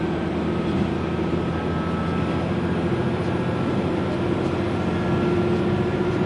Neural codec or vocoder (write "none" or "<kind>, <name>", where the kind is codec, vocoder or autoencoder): none